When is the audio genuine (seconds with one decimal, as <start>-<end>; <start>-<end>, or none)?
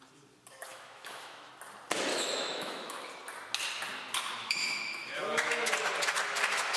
0.0-0.7; 1.5-2.1; 3.1-4.4; 5.7-6.8